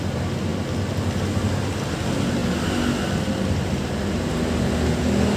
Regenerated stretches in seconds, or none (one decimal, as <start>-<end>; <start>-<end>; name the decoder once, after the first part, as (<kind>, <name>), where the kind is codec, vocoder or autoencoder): none